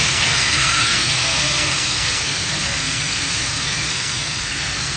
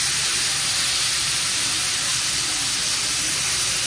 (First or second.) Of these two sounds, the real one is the second